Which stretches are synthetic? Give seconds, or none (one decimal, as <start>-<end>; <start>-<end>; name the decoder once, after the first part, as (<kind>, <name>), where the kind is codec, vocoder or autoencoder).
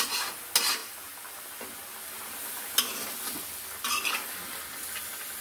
0.8-1.4 (vocoder, BigVGAN v2)